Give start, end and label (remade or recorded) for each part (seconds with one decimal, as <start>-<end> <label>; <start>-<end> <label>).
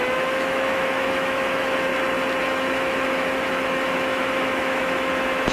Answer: 0.0-1.9 remade; 1.9-2.4 recorded; 2.4-5.5 remade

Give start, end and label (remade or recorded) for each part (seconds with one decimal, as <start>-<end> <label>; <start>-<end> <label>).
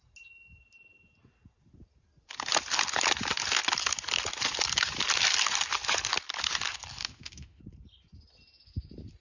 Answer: 0.0-7.0 recorded; 7.0-7.6 remade; 7.6-9.2 recorded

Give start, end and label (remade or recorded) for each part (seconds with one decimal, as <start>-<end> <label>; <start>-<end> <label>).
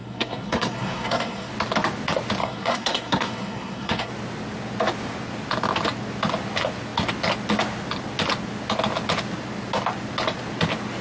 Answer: 0.0-1.5 remade; 1.5-2.4 recorded; 2.4-4.1 remade; 4.1-11.0 recorded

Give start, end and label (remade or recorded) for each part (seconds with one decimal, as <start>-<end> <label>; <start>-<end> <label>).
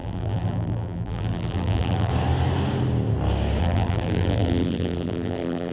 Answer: 0.0-2.1 remade; 2.1-3.6 recorded; 3.6-5.7 remade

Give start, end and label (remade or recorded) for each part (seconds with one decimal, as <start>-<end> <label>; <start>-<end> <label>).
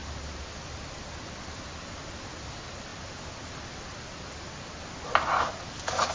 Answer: 0.0-6.1 recorded